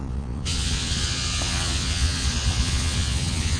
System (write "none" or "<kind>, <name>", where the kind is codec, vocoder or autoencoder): vocoder, Vocos